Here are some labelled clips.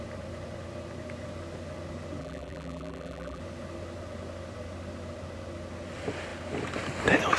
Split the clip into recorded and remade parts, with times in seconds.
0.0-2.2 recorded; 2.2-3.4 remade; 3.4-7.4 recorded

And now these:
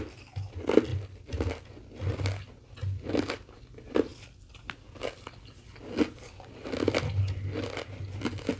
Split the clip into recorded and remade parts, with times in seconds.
0.0-8.6 recorded

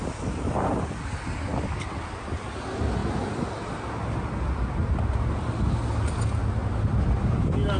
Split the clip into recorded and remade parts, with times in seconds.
0.0-7.8 recorded

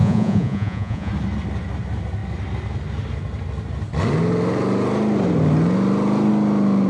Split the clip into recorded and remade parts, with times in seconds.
0.0-1.1 remade; 1.1-6.9 recorded

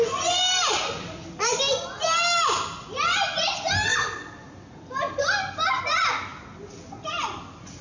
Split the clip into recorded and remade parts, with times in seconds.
0.0-7.8 recorded

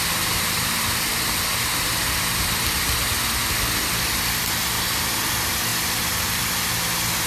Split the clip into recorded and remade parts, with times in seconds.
0.0-7.3 recorded

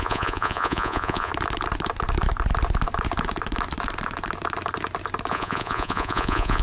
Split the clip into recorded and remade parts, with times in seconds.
0.0-1.3 remade; 1.3-5.3 recorded; 5.3-6.6 remade

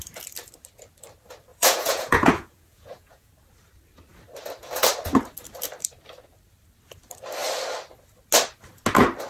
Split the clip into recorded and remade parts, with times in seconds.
0.0-1.5 recorded; 1.5-3.3 remade; 3.3-9.3 recorded